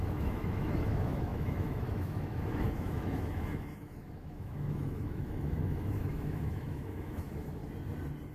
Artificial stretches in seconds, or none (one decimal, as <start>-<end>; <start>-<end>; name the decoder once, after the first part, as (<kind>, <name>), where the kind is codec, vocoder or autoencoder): 0.0-7.6 (autoencoder, DAC-VAE)